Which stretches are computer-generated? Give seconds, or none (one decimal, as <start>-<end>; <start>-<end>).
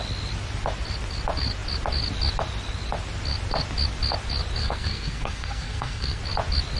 4.6-6.2